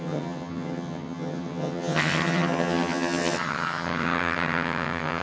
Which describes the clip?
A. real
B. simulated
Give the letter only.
B